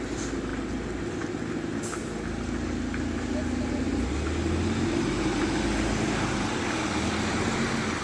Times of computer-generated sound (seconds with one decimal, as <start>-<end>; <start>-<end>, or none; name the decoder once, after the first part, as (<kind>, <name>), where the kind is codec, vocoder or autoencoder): none